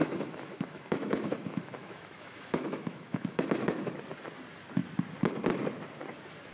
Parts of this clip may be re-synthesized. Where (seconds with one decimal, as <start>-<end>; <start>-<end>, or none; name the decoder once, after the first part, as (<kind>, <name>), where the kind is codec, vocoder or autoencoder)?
0.0-3.9 (autoencoder, DAC-VAE)